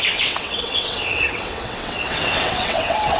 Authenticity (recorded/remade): remade